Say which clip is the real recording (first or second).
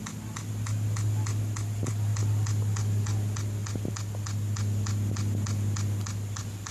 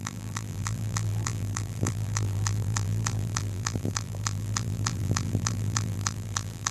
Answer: first